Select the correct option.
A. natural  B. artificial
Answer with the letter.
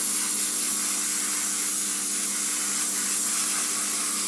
A